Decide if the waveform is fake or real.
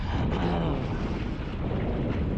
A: real